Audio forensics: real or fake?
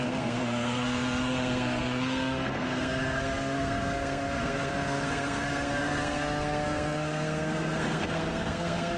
fake